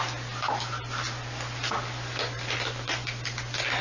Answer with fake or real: real